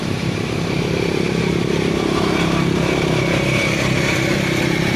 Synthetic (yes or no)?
yes